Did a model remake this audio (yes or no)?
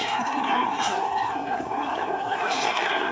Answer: yes